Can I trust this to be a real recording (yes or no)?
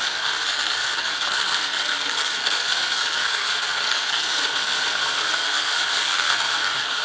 no